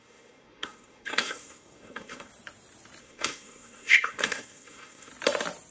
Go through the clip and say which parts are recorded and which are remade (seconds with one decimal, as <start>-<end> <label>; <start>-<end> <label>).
0.0-2.3 remade; 2.3-3.0 recorded; 3.0-5.1 remade; 5.1-5.7 recorded